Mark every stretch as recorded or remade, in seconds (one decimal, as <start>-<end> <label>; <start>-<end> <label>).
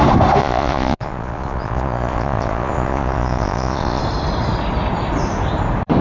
0.0-0.4 recorded; 0.4-4.0 remade; 4.0-6.0 recorded